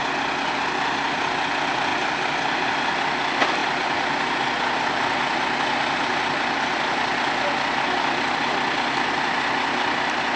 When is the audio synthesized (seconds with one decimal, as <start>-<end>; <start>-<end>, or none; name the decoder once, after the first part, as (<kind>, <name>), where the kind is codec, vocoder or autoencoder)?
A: none